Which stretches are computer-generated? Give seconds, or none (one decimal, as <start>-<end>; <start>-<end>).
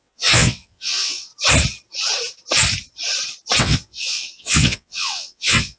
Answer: 0.0-1.3; 3.6-5.8